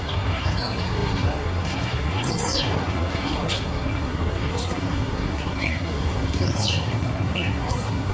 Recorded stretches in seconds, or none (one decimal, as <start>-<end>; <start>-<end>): none